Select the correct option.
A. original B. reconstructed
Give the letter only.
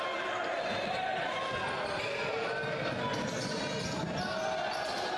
A